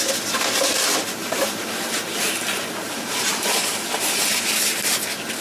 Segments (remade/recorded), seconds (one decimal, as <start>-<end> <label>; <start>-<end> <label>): 0.0-1.2 recorded; 1.2-4.4 remade; 4.4-5.4 recorded

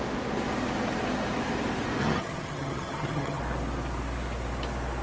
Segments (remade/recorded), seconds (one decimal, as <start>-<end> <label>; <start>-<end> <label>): 0.0-2.0 recorded; 2.0-3.4 remade; 3.4-5.0 recorded